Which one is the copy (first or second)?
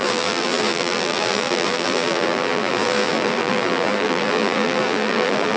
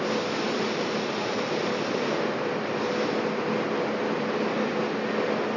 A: first